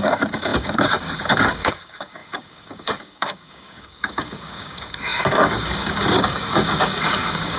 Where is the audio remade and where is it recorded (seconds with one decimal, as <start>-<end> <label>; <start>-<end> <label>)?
0.0-7.6 remade